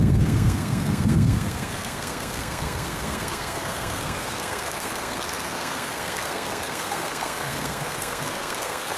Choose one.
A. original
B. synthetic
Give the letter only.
B